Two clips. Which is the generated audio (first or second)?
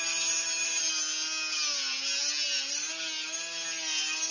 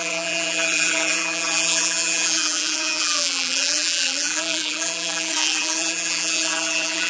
second